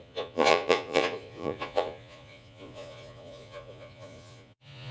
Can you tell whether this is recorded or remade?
remade